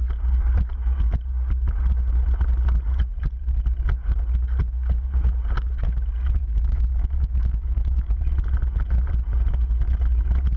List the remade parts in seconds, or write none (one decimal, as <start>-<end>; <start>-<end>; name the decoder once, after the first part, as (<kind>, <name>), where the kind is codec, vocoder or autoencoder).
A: 6.4-8.2 (autoencoder, DAC-VAE)